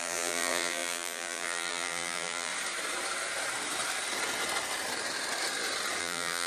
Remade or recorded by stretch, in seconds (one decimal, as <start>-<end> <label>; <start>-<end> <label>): 0.0-2.5 remade; 2.5-6.0 recorded; 6.0-6.5 remade